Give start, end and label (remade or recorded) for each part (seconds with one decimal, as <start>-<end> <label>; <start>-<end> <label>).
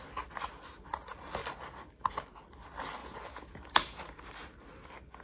0.0-3.0 recorded; 3.0-4.2 remade; 4.2-5.2 recorded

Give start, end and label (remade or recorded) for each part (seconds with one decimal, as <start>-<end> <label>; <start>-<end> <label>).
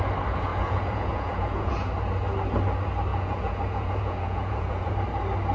0.0-0.5 recorded; 0.5-1.9 remade; 1.9-3.1 recorded; 3.1-4.9 remade; 4.9-5.5 recorded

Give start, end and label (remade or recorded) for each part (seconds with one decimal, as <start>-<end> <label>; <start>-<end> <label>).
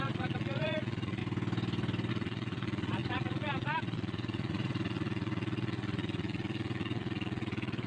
0.0-1.2 remade; 1.2-2.1 recorded; 2.1-7.9 remade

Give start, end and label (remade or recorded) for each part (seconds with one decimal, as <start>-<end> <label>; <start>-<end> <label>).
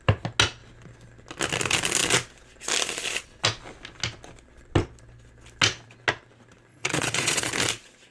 0.0-6.7 recorded; 6.7-7.5 remade; 7.5-8.1 recorded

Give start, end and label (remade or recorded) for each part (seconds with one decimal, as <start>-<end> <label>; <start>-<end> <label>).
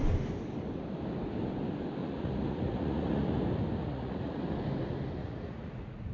0.0-2.0 recorded; 2.0-3.3 remade; 3.3-3.8 recorded; 3.8-4.4 remade; 4.4-5.2 recorded; 5.2-6.1 remade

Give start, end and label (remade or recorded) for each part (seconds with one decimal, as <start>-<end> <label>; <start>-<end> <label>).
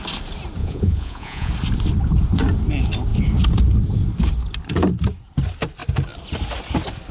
0.0-0.6 recorded; 0.6-1.5 remade; 1.5-7.1 recorded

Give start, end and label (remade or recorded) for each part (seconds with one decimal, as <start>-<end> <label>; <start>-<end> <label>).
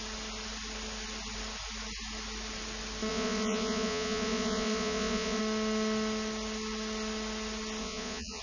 0.0-3.1 recorded; 3.1-5.4 remade; 5.4-7.8 recorded; 7.8-8.4 remade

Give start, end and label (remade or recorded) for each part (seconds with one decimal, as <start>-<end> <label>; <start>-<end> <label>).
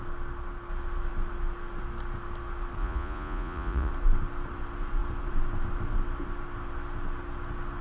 0.0-2.8 recorded; 2.8-3.9 remade; 3.9-7.8 recorded